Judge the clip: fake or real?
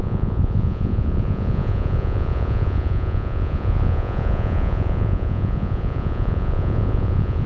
fake